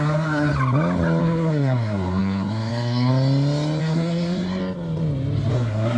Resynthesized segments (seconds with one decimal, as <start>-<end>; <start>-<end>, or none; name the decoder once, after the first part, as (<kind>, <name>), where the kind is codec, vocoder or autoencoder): 0.0-0.5 (codec, SNAC); 1.2-3.1; 3.8-4.6; 5.5-6.0